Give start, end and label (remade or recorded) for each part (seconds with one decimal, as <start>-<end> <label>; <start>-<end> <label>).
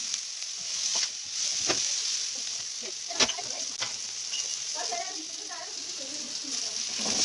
0.0-7.2 recorded